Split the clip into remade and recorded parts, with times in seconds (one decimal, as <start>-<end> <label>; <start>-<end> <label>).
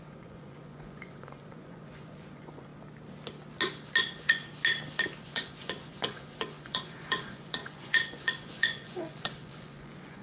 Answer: 0.0-2.7 remade; 2.7-4.0 recorded; 4.0-4.4 remade; 4.4-5.2 recorded; 5.2-10.2 remade